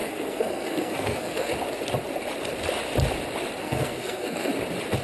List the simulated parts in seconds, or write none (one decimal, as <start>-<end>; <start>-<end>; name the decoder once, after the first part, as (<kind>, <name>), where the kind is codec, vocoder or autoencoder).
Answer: 0.0-1.5 (codec, SNAC); 3.6-4.5